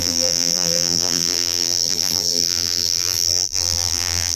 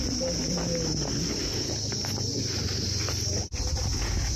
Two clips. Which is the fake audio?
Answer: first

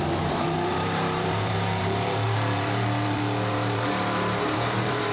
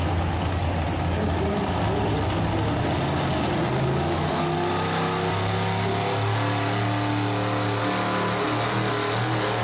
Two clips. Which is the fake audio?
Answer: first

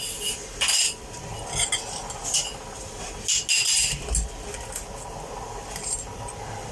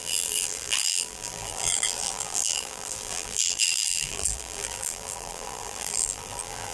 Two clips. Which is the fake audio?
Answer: second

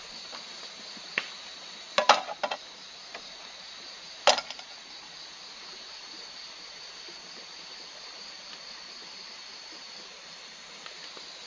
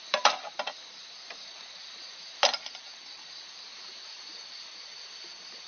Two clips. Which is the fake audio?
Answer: second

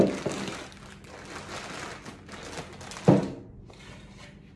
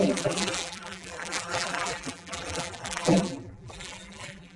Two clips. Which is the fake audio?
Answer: second